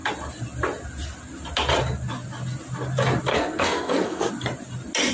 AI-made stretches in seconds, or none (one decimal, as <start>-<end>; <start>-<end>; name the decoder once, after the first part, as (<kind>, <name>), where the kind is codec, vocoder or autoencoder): 3.3-4.3 (codec, SNAC)